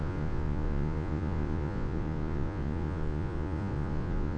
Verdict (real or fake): fake